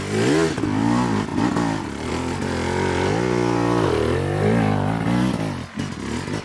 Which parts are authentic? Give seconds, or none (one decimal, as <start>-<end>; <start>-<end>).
0.0-6.4